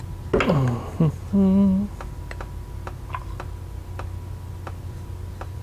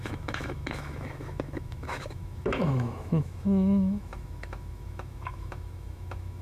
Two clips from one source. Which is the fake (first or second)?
second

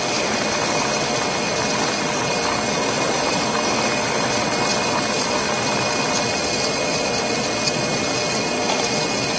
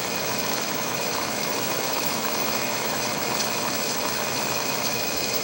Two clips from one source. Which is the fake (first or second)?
second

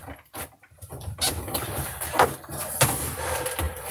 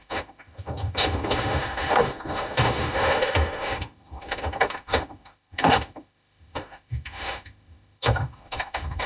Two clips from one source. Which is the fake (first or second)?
second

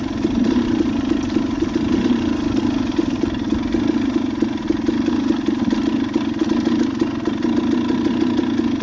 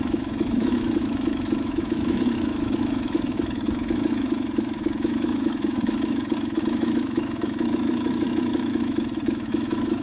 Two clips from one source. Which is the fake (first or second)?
second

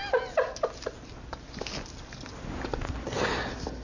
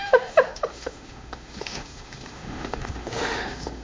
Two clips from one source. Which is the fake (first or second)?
second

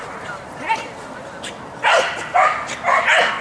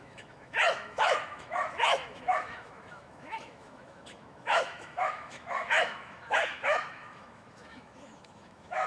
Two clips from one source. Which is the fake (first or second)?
second